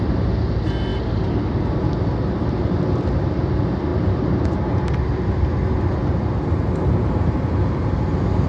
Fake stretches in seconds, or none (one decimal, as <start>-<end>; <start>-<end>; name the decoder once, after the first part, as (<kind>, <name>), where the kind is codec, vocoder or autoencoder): none